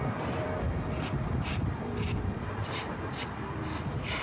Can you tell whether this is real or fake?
fake